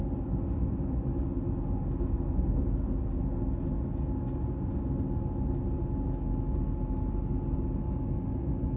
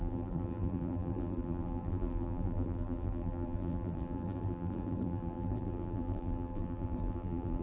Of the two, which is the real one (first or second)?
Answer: first